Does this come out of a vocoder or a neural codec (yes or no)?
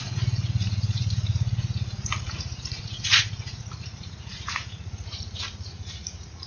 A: yes